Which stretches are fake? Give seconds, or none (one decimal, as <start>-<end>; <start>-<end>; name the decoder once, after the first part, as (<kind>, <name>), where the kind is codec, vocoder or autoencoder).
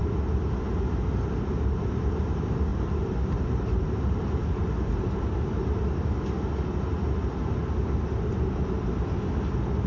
2.7-6.2 (vocoder, BigVGAN v2)